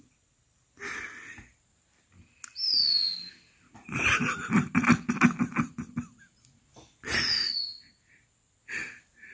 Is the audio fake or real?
real